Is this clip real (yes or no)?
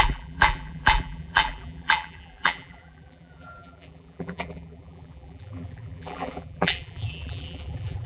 no